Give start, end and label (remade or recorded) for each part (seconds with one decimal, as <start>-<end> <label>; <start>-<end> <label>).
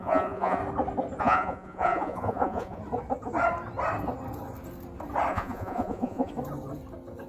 0.0-0.6 remade; 0.6-1.2 recorded; 1.2-2.8 remade; 2.8-5.3 recorded; 5.3-6.3 remade; 6.3-7.3 recorded